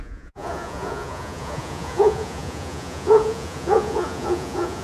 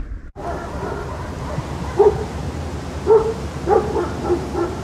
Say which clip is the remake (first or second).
first